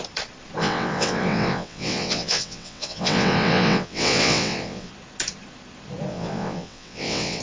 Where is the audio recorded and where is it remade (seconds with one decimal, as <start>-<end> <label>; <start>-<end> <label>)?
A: 0.0-0.6 recorded; 0.6-4.9 remade; 4.9-6.1 recorded; 6.1-7.4 remade

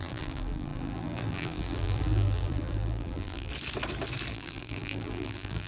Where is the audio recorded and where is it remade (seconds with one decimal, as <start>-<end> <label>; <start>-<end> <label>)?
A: 0.0-3.5 remade; 3.5-4.3 recorded; 4.3-5.7 remade

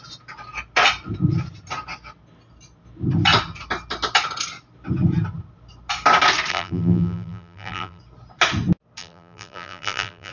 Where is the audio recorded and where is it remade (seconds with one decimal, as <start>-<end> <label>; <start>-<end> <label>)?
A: 0.0-6.5 recorded; 6.5-8.0 remade; 8.0-9.0 recorded; 9.0-10.3 remade

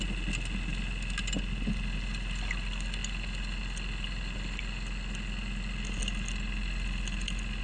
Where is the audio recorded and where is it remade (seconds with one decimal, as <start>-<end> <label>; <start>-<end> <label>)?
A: 0.0-7.6 recorded

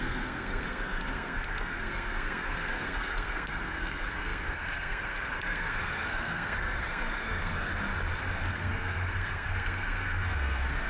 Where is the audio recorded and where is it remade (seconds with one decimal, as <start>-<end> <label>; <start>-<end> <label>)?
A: 0.0-7.7 remade; 7.7-8.5 recorded; 8.5-10.9 remade

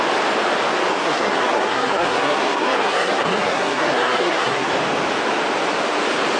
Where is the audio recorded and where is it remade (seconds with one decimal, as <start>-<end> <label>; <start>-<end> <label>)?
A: 0.0-0.9 recorded; 0.9-4.7 remade; 4.7-6.4 recorded

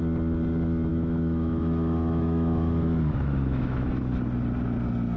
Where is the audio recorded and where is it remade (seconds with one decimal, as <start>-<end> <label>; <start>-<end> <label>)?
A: 0.0-0.9 recorded; 0.9-4.0 remade; 4.0-5.2 recorded